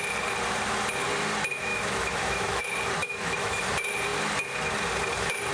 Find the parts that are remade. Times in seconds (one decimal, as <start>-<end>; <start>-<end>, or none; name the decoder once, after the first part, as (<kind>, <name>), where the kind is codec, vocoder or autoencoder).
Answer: 1.7-2.6 (autoencoder, DAC-VAE); 3.0-3.6